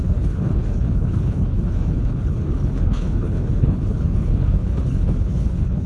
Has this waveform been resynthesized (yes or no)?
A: yes